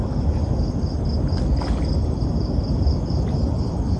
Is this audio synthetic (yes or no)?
no